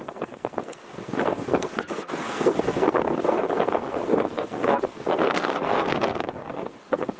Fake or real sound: fake